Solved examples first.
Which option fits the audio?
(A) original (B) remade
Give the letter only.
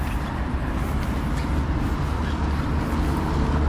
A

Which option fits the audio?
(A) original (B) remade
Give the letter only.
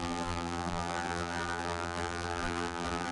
B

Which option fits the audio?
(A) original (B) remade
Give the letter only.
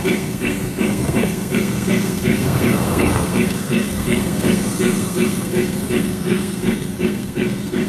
B